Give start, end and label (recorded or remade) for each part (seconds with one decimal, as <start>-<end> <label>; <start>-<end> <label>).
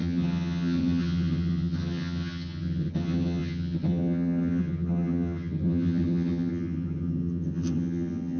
0.0-8.4 remade